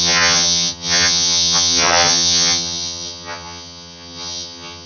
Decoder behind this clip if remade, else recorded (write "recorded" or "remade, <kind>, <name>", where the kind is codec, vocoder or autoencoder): remade, vocoder, HiFi-GAN